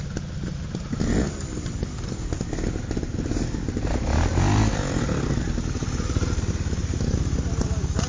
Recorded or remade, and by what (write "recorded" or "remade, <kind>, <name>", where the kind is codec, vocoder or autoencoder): recorded